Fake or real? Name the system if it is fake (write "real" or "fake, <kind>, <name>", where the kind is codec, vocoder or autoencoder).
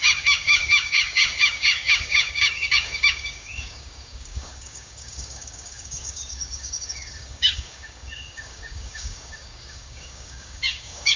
fake, codec, DAC